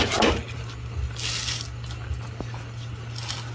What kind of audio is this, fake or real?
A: real